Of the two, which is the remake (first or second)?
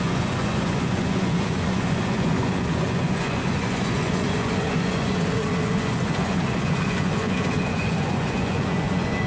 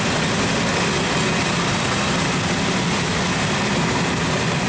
first